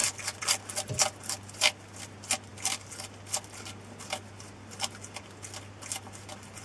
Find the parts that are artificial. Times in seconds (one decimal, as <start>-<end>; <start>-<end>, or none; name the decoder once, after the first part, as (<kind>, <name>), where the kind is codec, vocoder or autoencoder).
0.0-0.6 (vocoder, BigVGAN v2)